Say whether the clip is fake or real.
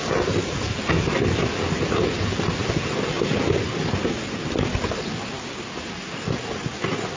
real